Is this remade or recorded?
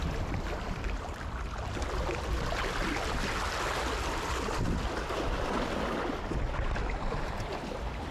recorded